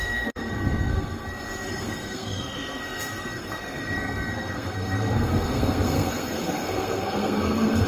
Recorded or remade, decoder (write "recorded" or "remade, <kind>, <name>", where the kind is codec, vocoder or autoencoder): remade, codec, SNAC